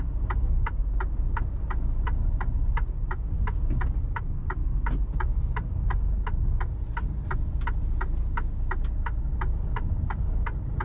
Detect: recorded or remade recorded